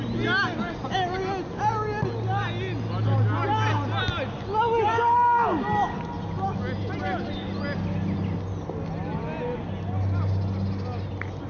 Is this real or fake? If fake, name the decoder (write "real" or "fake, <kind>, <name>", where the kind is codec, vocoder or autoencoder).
real